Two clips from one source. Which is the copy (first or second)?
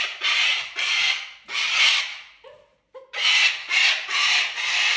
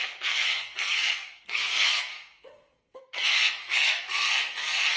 second